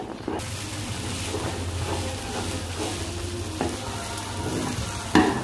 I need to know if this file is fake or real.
real